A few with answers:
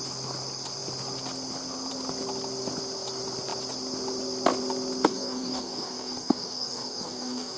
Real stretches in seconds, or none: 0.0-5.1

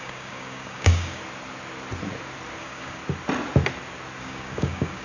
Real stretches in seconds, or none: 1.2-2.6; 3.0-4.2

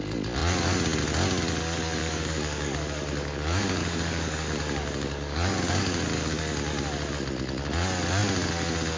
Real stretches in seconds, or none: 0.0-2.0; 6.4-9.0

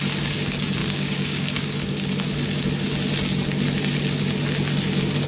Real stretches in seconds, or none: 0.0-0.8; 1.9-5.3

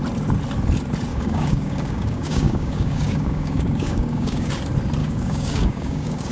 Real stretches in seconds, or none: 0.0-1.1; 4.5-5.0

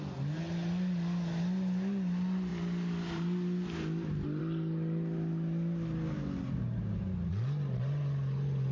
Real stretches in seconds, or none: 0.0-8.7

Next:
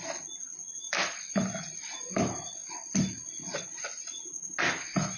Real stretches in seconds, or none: 0.0-5.2